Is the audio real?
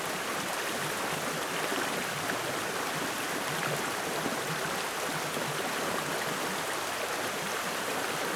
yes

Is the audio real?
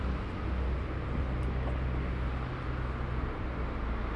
yes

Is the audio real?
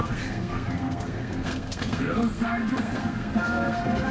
no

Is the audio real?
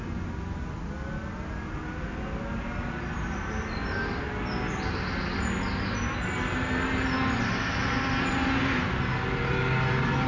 yes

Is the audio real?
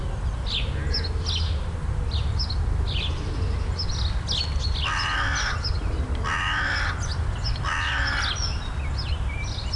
yes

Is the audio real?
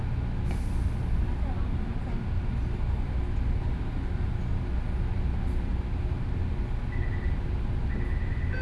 yes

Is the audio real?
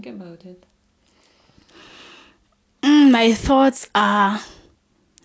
yes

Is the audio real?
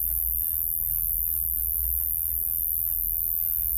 yes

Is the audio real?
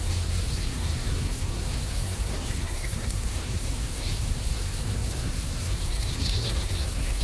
no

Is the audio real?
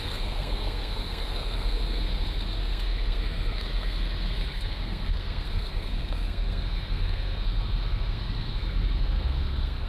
no